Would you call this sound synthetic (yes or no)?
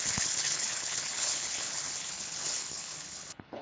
yes